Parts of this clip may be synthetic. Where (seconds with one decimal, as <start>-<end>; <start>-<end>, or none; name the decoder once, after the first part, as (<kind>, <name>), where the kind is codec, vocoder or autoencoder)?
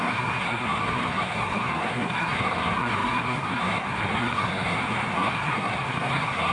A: 0.0-6.5 (codec, SNAC)